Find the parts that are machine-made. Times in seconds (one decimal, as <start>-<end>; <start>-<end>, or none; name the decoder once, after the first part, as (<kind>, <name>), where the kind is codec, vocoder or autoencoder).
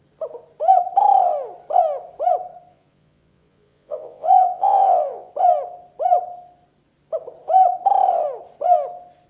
2.7-5.3 (vocoder, Vocos)